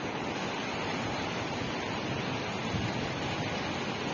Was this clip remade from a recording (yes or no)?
no